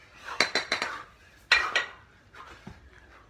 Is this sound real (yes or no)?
yes